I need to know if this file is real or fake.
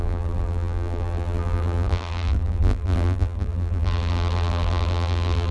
fake